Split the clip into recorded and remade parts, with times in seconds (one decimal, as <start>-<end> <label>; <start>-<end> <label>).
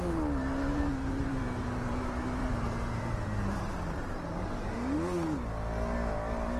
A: 0.0-0.7 recorded; 0.7-4.7 remade; 4.7-6.6 recorded